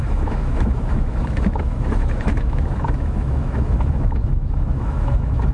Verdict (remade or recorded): remade